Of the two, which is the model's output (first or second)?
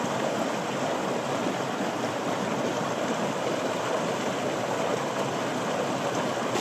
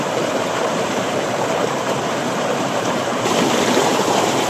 second